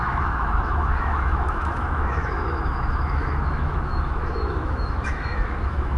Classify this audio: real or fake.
fake